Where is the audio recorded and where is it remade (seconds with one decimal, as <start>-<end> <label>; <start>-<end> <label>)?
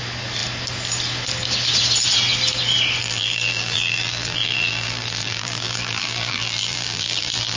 0.0-3.0 recorded; 3.0-7.6 remade